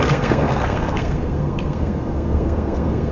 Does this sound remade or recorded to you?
remade